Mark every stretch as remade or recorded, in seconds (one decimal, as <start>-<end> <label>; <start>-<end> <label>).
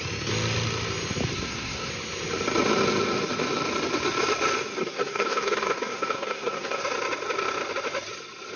0.0-1.3 recorded; 1.3-1.9 remade; 1.9-4.8 recorded; 4.8-6.8 remade; 6.8-8.6 recorded